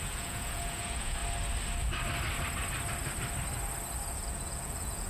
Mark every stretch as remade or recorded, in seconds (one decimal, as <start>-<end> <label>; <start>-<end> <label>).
0.0-1.2 remade; 1.2-4.1 recorded; 4.1-5.1 remade